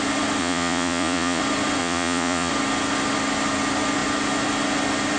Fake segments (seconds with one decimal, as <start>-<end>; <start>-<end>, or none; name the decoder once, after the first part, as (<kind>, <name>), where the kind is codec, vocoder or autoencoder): 0.4-1.4 (vocoder, Vocos); 1.8-2.5